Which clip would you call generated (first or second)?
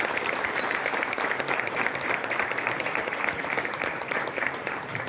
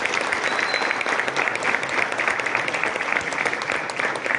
first